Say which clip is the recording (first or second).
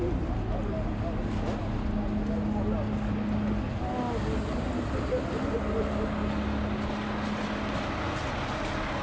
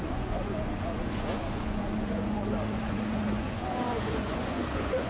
first